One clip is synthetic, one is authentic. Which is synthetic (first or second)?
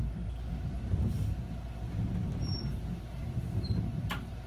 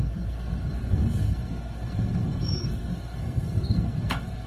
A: second